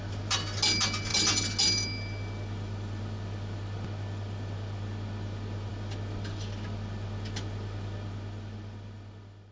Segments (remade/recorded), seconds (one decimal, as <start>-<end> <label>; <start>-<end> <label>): 0.0-9.5 recorded